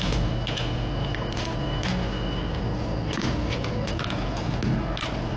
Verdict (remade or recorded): recorded